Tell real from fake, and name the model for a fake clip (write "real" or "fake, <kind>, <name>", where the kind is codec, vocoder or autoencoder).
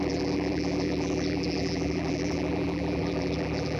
fake, vocoder, BigVGAN v2